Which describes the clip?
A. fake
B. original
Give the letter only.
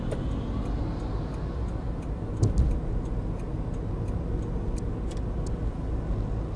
B